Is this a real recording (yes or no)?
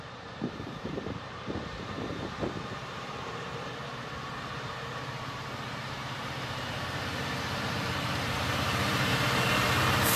no